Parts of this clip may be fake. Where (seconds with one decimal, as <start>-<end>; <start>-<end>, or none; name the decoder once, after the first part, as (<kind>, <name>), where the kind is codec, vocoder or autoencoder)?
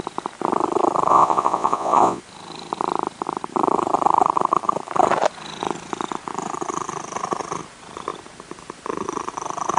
1.1-2.2 (vocoder, Vocos)